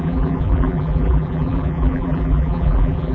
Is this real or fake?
fake